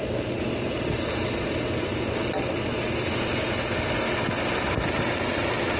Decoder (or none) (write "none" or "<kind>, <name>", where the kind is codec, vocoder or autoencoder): none